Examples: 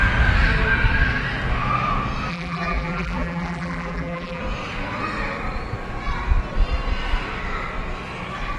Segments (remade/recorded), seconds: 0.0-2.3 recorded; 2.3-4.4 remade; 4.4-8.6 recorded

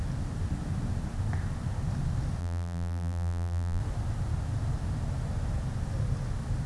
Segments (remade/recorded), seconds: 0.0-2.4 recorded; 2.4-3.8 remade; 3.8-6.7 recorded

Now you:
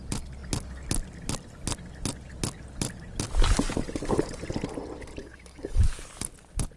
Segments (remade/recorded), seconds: 0.0-5.2 recorded; 5.2-5.8 remade; 5.8-6.8 recorded

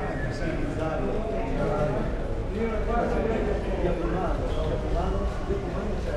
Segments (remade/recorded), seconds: 0.0-6.2 recorded

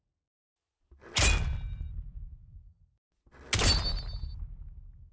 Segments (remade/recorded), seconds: 0.0-2.1 recorded; 2.1-2.8 remade; 2.8-5.1 recorded

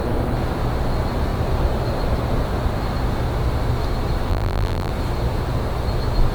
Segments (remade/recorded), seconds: 0.0-4.3 recorded; 4.3-4.9 remade; 4.9-6.3 recorded